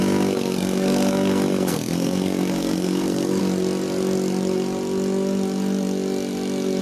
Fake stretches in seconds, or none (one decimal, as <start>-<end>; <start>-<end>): 0.0-3.4